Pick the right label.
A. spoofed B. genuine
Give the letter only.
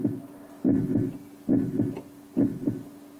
B